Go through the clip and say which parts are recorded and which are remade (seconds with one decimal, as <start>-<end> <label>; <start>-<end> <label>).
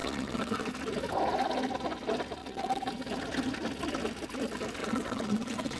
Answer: 0.0-0.7 remade; 0.7-2.4 recorded; 2.4-2.9 remade; 2.9-4.8 recorded; 4.8-5.8 remade